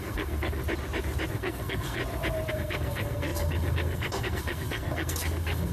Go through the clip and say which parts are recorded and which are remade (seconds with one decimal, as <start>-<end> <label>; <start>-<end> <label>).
0.0-0.6 remade; 0.6-1.3 recorded; 1.3-2.0 remade; 2.0-2.5 recorded; 2.5-5.7 remade